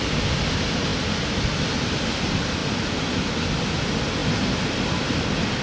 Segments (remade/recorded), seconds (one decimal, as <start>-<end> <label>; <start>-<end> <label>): 0.0-5.6 recorded